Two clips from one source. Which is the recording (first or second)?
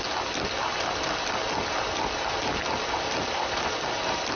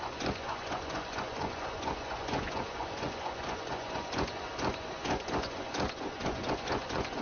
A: first